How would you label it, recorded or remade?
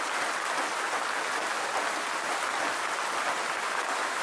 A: recorded